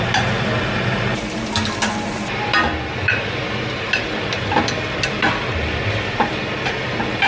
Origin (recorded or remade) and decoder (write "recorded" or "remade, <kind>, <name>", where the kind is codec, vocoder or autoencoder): recorded